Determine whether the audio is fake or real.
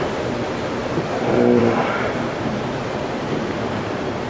fake